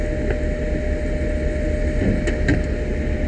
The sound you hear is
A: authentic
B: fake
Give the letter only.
A